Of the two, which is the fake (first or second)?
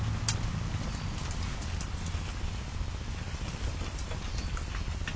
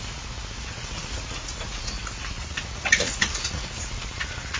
second